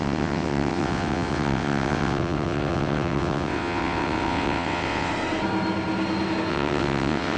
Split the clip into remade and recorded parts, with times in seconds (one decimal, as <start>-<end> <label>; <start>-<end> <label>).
0.0-5.1 remade; 5.1-6.5 recorded; 6.5-7.4 remade